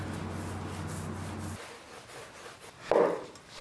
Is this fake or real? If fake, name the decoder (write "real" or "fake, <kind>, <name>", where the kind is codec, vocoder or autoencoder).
real